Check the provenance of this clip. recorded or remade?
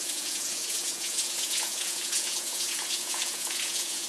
remade